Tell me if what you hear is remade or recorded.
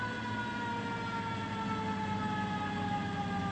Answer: recorded